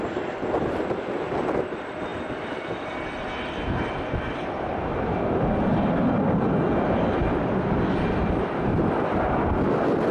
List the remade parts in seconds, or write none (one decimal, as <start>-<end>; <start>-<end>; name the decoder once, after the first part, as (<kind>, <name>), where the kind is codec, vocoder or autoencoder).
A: none